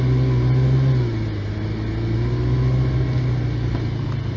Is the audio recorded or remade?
recorded